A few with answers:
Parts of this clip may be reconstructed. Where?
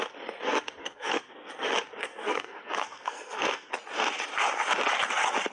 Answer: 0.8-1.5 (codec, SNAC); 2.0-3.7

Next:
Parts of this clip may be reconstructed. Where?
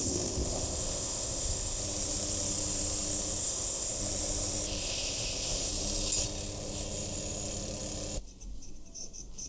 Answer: 0.0-1.8 (codec, ZipCodec); 3.4-4.0; 4.8-5.7